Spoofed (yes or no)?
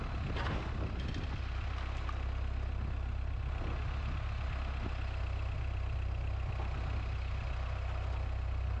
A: no